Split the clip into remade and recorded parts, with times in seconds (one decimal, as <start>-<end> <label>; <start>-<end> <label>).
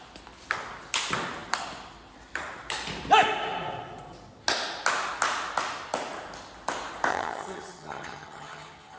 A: 0.0-7.1 recorded; 7.1-9.0 remade